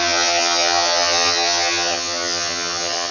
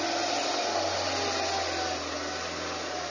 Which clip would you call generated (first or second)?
first